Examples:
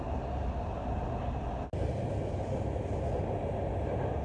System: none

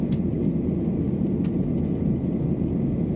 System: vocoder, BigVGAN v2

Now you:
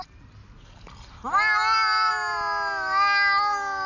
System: none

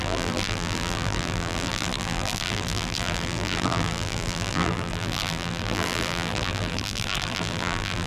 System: vocoder, BigVGAN v2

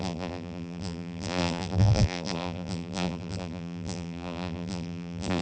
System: vocoder, BigVGAN v2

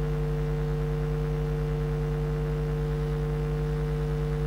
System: none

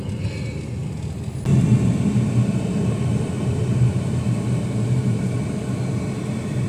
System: none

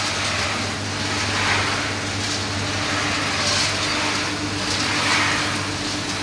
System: none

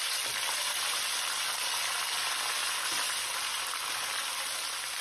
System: none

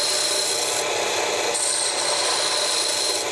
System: none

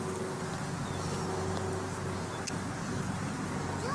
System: none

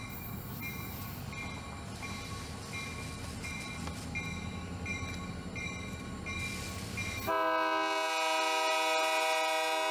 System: none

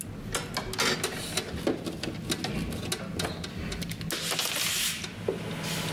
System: none